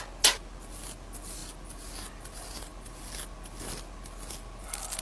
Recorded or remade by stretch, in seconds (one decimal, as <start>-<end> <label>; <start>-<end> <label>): 0.0-5.0 recorded